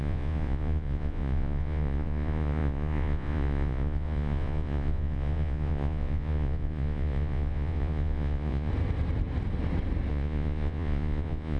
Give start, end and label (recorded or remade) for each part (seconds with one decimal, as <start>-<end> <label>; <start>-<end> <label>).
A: 0.0-8.7 remade; 8.7-10.1 recorded; 10.1-11.6 remade